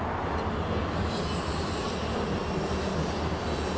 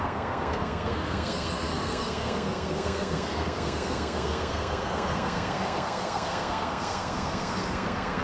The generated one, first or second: second